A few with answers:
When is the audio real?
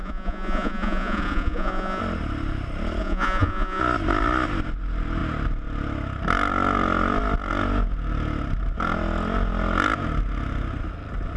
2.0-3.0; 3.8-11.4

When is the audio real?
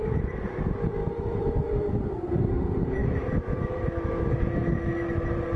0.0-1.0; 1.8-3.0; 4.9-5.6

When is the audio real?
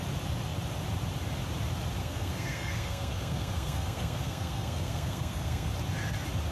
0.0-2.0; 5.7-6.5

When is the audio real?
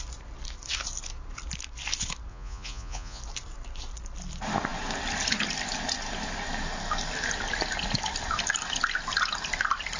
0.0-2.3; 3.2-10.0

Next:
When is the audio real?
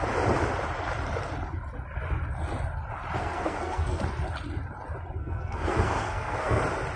0.0-3.2; 4.0-5.2; 6.6-7.0